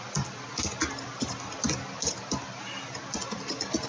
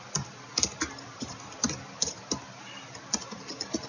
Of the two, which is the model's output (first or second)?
second